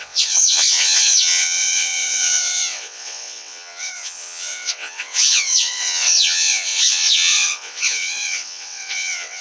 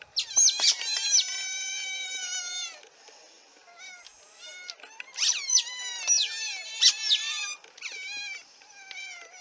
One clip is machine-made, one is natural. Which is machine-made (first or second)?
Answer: first